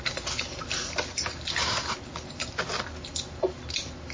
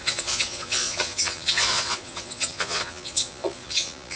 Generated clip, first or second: second